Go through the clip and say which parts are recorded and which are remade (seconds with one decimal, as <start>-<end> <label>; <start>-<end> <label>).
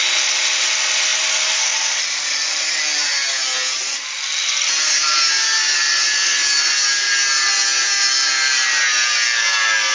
0.0-9.9 recorded